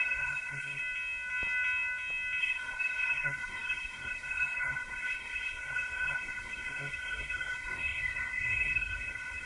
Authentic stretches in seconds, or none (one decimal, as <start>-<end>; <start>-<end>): 0.8-2.4